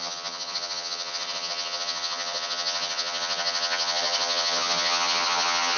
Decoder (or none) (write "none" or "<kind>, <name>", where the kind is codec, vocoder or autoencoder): vocoder, HiFi-GAN